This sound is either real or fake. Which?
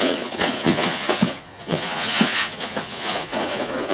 fake